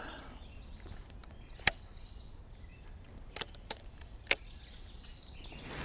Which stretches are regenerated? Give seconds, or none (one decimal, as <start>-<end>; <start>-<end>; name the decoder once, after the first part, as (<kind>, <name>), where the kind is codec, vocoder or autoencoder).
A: 1.2-4.7 (vocoder, BigVGAN v2)